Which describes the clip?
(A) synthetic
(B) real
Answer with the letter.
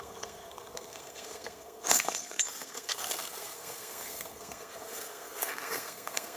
A